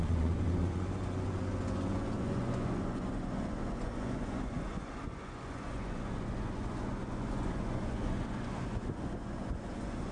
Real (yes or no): no